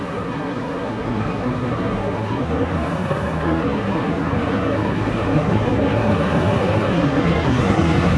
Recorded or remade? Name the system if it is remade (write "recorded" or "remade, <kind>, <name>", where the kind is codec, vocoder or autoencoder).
remade, codec, SNAC